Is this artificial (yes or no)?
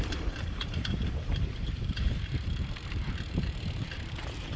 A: yes